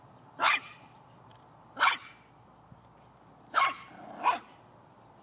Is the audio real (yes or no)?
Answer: yes